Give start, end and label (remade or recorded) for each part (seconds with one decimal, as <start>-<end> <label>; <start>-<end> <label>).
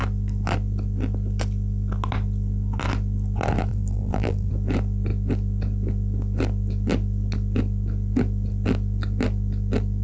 0.0-3.7 recorded; 3.7-4.5 remade; 4.5-10.0 recorded